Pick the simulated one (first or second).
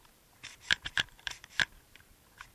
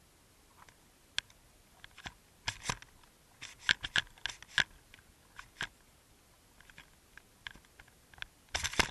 first